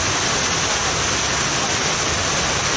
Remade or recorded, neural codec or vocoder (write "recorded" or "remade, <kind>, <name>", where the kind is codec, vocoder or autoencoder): recorded